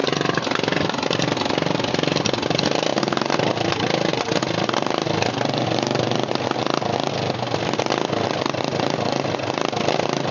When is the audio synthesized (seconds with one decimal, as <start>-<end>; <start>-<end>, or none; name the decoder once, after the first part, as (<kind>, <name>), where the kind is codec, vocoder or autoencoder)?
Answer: none